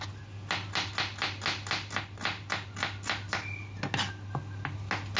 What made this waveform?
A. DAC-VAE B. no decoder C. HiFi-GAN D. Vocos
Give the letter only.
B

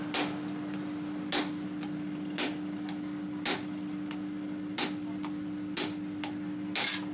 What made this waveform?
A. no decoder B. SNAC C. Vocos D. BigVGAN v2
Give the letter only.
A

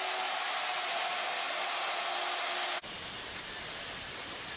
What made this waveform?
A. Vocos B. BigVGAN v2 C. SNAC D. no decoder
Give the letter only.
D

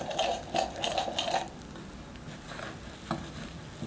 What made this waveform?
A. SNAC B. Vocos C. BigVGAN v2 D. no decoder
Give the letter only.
D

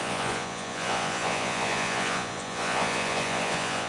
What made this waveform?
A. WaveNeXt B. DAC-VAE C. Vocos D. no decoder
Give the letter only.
C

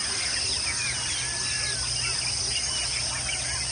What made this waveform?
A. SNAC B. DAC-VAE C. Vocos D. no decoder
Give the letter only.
D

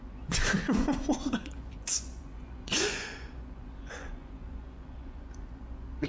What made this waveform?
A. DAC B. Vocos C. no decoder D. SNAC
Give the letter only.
B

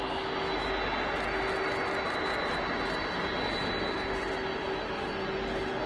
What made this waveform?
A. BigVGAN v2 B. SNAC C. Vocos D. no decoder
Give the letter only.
D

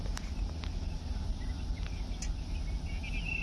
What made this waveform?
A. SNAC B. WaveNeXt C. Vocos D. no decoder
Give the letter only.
D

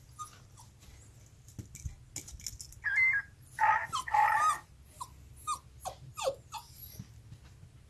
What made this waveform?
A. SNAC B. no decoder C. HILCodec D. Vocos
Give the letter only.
B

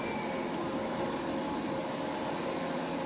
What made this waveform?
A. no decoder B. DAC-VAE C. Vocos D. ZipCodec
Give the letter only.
A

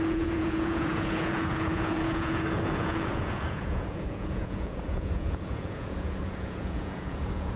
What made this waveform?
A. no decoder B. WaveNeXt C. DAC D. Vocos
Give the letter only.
D